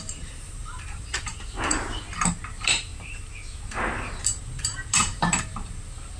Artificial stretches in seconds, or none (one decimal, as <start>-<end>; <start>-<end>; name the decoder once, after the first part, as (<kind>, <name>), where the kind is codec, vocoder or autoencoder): 0.0-1.7 (vocoder, BigVGAN v2); 2.5-2.9; 4.2-6.2